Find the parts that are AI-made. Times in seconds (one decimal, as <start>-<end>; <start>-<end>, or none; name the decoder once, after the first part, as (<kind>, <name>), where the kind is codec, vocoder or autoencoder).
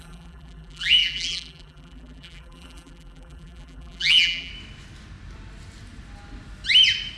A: 0.0-4.5 (vocoder, BigVGAN v2)